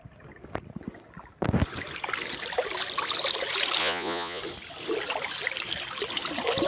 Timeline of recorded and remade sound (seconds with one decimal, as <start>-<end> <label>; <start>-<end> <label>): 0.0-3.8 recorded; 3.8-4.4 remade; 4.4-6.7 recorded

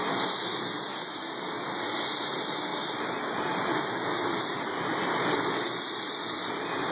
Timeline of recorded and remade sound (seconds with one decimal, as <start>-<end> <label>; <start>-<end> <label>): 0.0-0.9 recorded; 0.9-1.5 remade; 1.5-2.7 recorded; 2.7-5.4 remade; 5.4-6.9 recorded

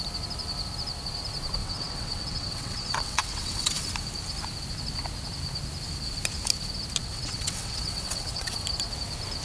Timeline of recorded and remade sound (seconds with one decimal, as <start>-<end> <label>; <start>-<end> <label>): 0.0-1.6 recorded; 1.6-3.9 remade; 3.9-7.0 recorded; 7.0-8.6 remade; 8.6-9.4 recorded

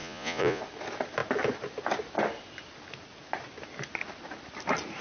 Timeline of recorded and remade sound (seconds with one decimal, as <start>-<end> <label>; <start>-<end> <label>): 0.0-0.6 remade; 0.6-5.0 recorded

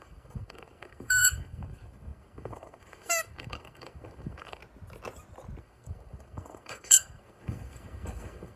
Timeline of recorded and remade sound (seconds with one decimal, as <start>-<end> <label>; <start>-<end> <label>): 0.0-4.6 remade; 4.6-5.6 recorded; 5.6-8.6 remade

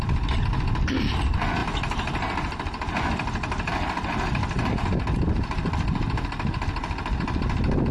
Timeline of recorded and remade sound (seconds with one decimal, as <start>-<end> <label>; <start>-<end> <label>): 0.0-1.6 recorded; 1.6-4.7 remade; 4.7-7.9 recorded